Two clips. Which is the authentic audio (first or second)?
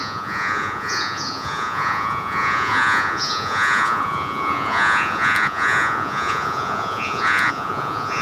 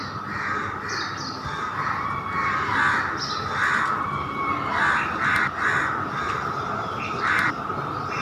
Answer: second